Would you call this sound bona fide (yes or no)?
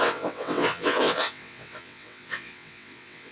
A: no